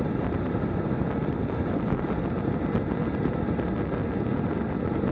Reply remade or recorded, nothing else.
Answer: recorded